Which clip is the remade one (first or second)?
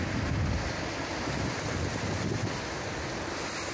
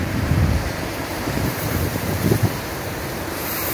second